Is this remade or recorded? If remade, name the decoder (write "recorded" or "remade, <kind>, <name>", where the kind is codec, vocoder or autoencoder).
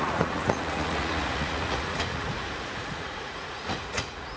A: remade, vocoder, Vocos